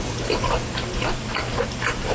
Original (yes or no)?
no